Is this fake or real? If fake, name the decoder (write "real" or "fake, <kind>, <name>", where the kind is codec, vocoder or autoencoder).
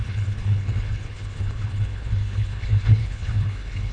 fake, codec, HILCodec